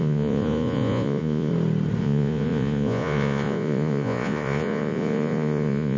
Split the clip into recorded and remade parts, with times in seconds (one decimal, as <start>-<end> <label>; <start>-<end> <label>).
0.0-1.5 remade; 1.5-2.0 recorded; 2.0-6.0 remade